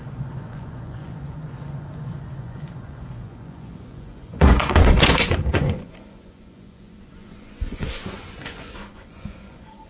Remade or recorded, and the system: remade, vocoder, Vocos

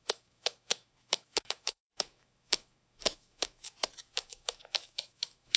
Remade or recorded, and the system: remade, autoencoder, DAC-VAE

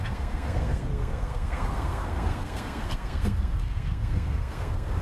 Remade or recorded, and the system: remade, codec, SNAC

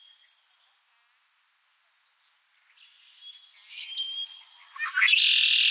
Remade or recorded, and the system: recorded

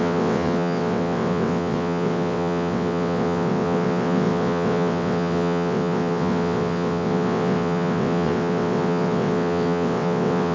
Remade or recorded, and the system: remade, vocoder, WaveNeXt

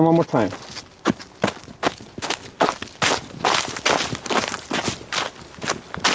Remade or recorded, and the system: recorded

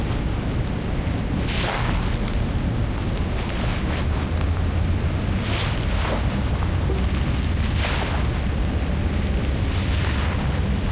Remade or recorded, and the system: recorded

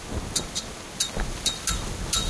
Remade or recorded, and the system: recorded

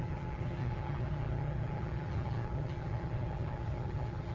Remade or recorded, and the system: remade, vocoder, HiFi-GAN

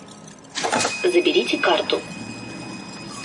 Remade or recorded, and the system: recorded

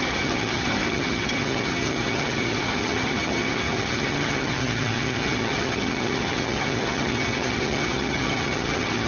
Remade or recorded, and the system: remade, vocoder, HiFi-GAN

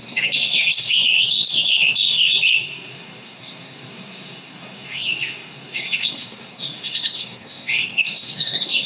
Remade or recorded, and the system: remade, codec, SNAC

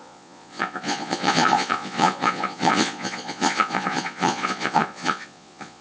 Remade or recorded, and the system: remade, vocoder, Vocos